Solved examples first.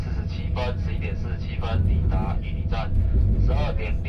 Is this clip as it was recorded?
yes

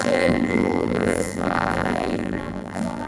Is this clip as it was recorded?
no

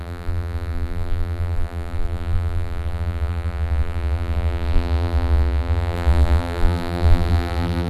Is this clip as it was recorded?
no